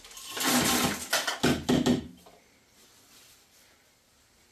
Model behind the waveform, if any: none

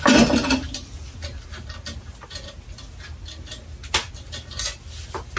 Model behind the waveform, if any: none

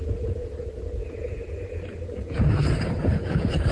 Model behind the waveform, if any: vocoder, Vocos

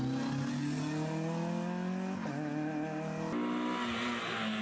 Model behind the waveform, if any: none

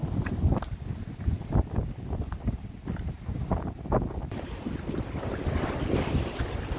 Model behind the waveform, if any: none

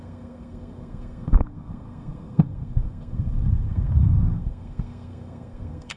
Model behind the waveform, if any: codec, SNAC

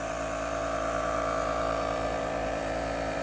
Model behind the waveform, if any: vocoder, BigVGAN v2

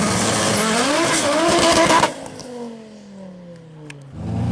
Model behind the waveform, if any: none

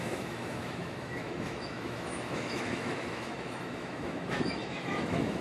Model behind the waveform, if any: autoencoder, DAC-VAE